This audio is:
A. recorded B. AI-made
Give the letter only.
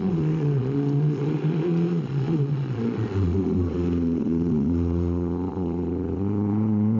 B